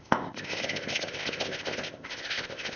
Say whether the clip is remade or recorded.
remade